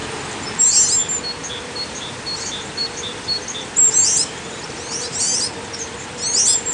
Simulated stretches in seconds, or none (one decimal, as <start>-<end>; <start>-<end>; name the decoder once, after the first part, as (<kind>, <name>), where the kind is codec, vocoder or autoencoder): 1.4-5.4 (vocoder, BigVGAN v2)